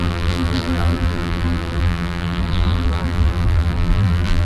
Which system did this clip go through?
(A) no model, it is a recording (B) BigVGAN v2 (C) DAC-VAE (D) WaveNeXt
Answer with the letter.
B